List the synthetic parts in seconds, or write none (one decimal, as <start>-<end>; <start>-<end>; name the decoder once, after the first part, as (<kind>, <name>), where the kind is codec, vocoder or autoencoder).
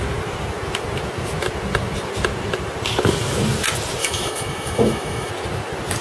4.0-5.3 (autoencoder, DAC-VAE)